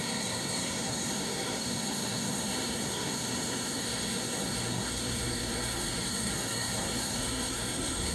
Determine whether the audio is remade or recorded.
remade